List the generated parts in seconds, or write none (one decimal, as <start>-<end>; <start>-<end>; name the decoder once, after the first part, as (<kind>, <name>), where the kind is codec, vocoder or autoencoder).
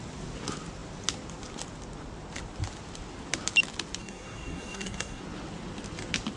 4.0-5.2 (codec, SNAC)